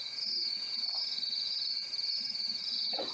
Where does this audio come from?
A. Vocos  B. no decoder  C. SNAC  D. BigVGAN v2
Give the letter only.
A